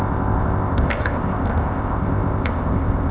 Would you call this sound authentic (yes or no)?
no